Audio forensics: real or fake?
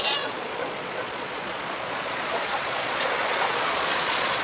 fake